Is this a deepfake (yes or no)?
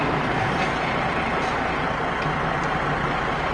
no